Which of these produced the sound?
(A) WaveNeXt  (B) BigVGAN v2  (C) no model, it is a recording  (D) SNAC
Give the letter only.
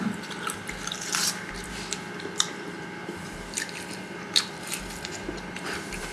B